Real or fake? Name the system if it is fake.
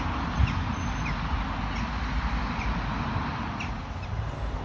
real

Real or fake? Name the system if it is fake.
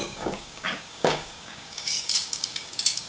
fake, codec, DAC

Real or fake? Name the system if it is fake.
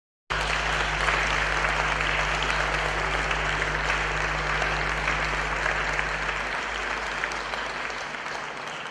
real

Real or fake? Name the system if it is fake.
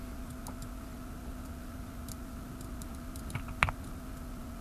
real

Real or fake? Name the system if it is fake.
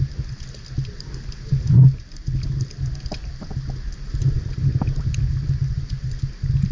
real